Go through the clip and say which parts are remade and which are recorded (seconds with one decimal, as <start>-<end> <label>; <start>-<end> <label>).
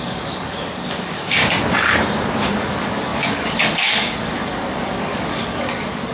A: 0.0-1.4 remade; 1.4-2.4 recorded; 2.4-6.1 remade